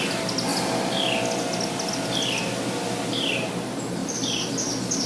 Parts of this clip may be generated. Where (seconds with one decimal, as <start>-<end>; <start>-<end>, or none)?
4.0-4.5